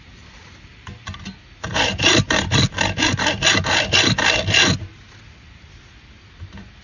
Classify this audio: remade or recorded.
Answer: recorded